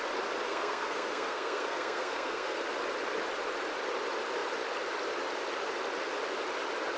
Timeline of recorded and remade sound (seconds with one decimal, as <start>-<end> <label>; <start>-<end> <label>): 0.0-0.5 recorded; 0.5-2.6 remade; 2.6-7.0 recorded